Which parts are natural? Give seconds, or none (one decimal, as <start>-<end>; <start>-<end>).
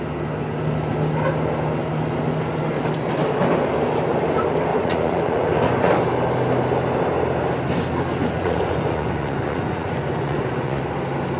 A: 0.0-4.7; 5.9-8.2; 10.8-11.4